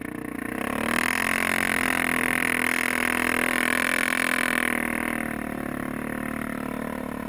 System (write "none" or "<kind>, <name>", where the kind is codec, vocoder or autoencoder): none